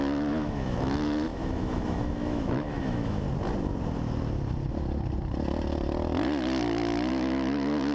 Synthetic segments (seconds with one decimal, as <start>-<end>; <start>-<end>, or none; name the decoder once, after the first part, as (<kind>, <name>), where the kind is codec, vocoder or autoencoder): 0.0-3.2 (autoencoder, DAC-VAE); 7.1-7.9